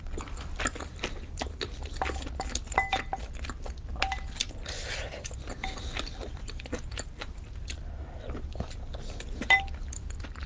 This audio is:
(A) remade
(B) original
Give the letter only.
B